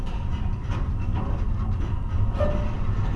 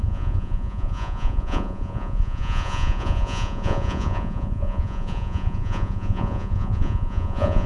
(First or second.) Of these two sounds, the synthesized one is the second